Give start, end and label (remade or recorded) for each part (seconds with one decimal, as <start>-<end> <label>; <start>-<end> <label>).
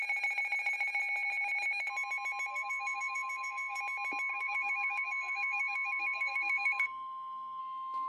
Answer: 0.0-2.5 recorded; 2.5-3.8 remade; 3.8-4.3 recorded; 4.3-7.6 remade; 7.6-8.1 recorded